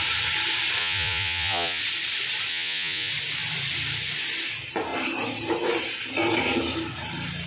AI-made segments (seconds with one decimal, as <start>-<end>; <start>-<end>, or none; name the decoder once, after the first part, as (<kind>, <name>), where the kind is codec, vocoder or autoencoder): 0.8-1.8 (vocoder, Vocos); 2.5-3.1